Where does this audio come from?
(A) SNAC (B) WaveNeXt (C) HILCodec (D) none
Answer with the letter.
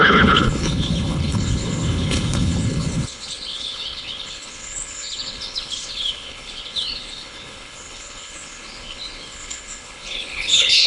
C